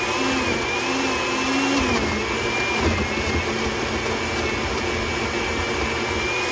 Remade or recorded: recorded